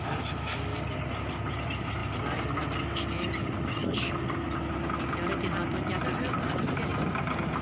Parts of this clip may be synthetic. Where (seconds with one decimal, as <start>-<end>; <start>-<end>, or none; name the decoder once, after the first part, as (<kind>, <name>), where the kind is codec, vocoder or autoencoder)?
none